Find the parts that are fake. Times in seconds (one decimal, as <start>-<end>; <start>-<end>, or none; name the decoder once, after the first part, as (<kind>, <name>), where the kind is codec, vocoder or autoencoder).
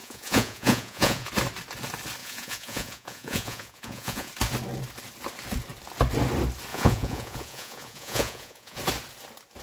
0.0-1.3 (vocoder, Vocos); 2.2-4.3; 6.7-8.8